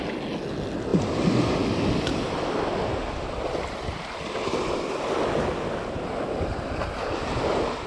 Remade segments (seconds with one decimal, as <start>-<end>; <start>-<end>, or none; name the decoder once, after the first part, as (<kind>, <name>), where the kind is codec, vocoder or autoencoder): none